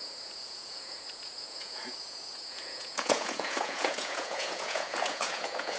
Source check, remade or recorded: remade